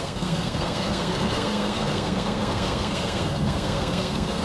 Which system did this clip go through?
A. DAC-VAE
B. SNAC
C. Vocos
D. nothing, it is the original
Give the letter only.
B